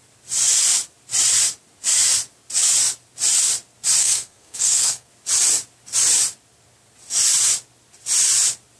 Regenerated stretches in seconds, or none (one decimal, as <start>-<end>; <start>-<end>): 4.0-5.1